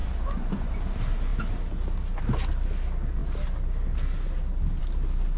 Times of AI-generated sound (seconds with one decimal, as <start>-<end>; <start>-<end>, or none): 0.0-0.7